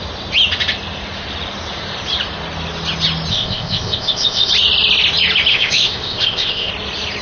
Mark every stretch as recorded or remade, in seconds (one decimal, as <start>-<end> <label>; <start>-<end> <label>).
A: 0.0-3.3 recorded; 3.3-4.5 remade; 4.5-5.5 recorded; 5.5-6.7 remade; 6.7-7.2 recorded